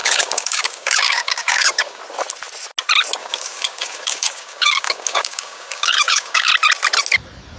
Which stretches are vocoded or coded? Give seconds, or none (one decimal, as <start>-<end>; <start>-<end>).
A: 0.0-2.0; 3.2-6.5